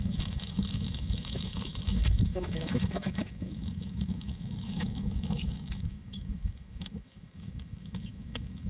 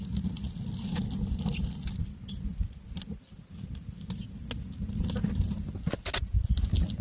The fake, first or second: first